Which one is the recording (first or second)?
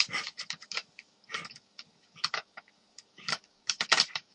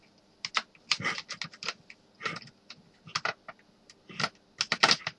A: second